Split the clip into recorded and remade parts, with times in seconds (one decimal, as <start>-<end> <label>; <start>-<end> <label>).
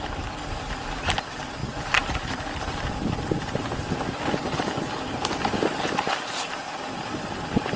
0.0-7.8 recorded